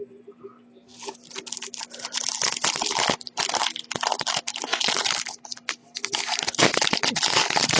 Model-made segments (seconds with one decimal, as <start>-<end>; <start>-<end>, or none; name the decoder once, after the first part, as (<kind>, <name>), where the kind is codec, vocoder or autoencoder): none